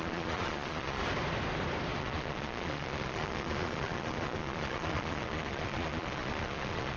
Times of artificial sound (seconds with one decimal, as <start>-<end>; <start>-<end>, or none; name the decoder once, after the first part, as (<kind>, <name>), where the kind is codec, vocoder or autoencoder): 0.0-1.0 (vocoder, Vocos); 2.0-7.0